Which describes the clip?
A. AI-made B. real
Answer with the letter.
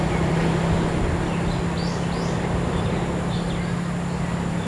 B